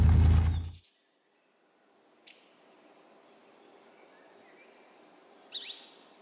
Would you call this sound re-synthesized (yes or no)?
no